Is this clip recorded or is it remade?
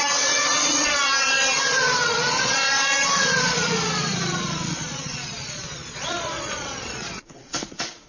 remade